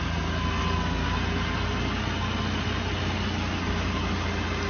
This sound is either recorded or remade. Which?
recorded